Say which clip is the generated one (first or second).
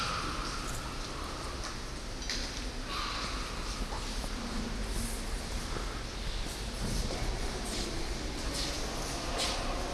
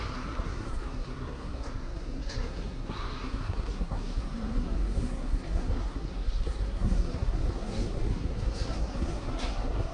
second